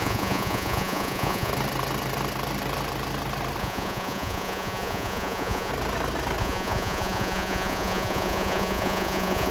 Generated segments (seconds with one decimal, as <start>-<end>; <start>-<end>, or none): 0.0-1.5; 3.6-5.7; 6.4-9.5